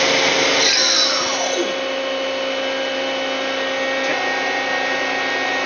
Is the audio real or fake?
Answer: real